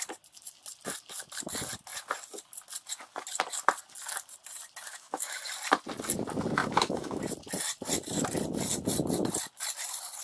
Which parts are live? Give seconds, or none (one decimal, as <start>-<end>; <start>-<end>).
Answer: 0.0-4.9; 5.4-6.6; 7.2-10.2